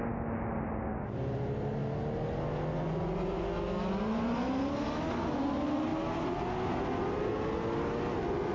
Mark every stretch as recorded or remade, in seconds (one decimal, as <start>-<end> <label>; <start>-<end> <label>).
0.0-8.5 recorded

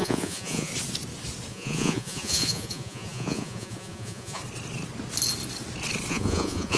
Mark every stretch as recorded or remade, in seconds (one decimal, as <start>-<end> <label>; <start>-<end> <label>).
0.0-0.7 remade; 0.7-1.5 recorded; 1.5-4.4 remade; 4.4-6.1 recorded; 6.1-6.8 remade